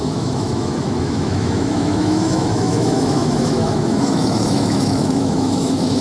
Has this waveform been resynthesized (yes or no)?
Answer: yes